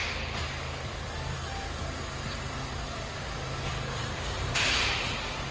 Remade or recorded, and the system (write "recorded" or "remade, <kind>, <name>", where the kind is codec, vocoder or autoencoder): recorded